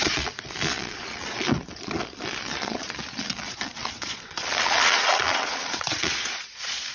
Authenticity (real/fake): fake